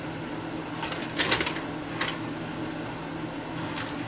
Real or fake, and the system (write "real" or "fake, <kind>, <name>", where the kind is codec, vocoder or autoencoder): real